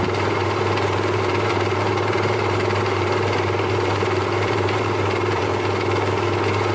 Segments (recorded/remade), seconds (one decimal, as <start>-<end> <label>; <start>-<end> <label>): 0.0-5.5 remade; 5.5-6.7 recorded